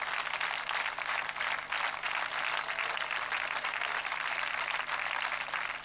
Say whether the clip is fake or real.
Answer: real